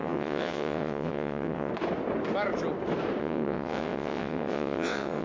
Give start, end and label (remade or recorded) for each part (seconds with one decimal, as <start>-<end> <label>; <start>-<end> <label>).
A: 0.0-1.7 remade; 1.7-3.2 recorded; 3.2-5.2 remade

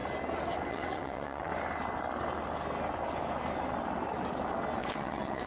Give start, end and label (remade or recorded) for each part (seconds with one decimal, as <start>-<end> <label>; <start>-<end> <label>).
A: 0.0-0.7 recorded; 0.7-1.5 remade; 1.5-4.8 recorded; 4.8-5.5 remade

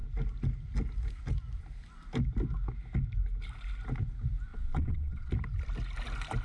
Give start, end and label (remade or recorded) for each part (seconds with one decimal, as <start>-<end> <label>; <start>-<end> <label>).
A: 0.0-4.5 recorded; 4.5-5.3 remade; 5.3-6.4 recorded

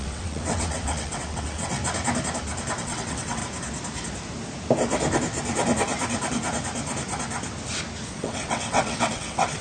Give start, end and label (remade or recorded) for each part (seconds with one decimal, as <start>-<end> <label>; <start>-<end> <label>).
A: 0.0-1.8 remade; 1.8-2.8 recorded; 2.8-3.4 remade; 3.4-8.1 recorded; 8.1-9.6 remade

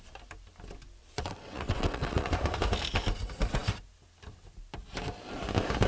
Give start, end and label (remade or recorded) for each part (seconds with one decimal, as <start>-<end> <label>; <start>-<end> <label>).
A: 0.0-1.0 recorded; 1.0-2.3 remade; 2.3-5.9 recorded

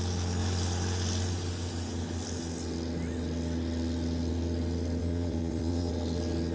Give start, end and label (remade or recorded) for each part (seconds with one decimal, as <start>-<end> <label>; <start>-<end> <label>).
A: 0.0-5.0 recorded; 5.0-5.9 remade; 5.9-6.5 recorded

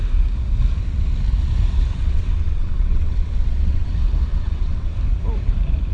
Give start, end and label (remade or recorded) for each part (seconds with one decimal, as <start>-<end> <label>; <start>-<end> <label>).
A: 0.0-2.0 recorded; 2.0-3.9 remade; 3.9-4.3 recorded; 4.3-5.0 remade; 5.0-5.9 recorded

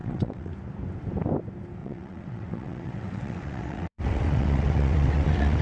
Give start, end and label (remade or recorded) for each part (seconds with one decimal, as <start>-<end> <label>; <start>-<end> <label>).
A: 0.0-0.5 remade; 0.5-1.8 recorded; 1.8-5.6 remade